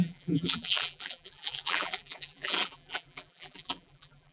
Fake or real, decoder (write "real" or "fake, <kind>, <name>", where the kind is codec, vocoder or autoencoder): fake, vocoder, BigVGAN v2